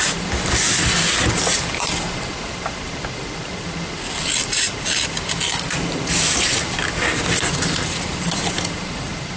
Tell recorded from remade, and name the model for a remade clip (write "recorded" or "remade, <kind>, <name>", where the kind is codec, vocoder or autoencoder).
recorded